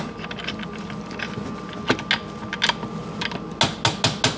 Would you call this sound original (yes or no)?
yes